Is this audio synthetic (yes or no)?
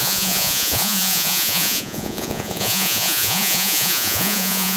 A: yes